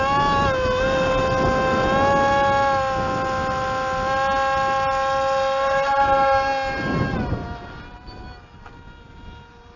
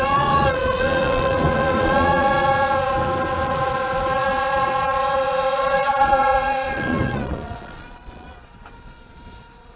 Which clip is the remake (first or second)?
second